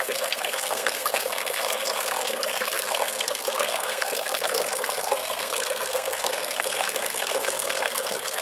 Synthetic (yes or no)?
yes